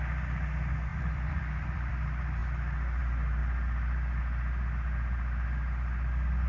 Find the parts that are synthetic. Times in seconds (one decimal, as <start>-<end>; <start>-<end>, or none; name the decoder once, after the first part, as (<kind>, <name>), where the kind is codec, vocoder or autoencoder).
0.9-1.9 (vocoder, BigVGAN v2); 2.4-3.0